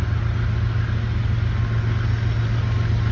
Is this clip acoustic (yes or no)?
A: yes